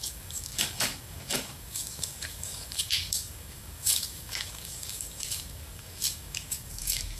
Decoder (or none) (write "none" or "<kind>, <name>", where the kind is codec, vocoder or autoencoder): codec, DAC